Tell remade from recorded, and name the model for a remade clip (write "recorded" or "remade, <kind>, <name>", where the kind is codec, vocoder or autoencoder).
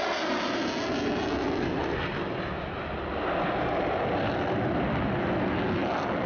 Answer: recorded